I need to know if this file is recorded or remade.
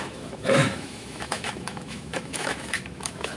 remade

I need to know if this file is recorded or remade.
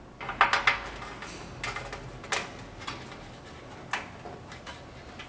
recorded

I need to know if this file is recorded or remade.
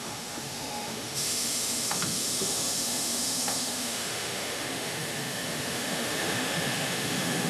remade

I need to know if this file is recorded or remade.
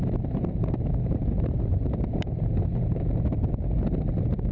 remade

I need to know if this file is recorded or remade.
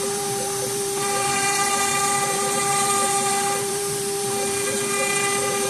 remade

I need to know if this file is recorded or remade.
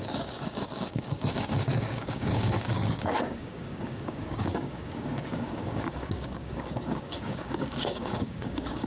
remade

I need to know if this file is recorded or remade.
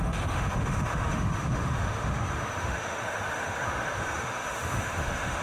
remade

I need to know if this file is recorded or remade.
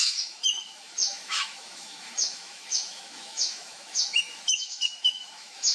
remade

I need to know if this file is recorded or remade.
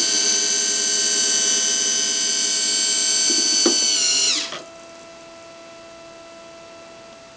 recorded